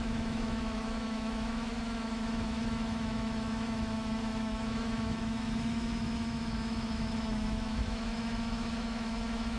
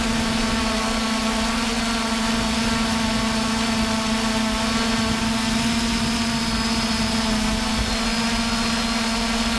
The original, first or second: second